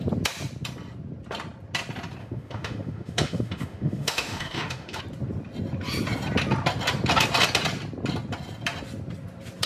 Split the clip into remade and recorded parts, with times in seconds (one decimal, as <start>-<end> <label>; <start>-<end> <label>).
0.0-2.2 recorded; 2.2-5.0 remade; 5.0-9.7 recorded